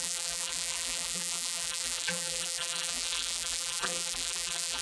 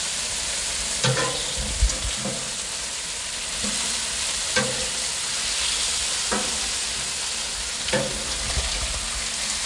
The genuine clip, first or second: second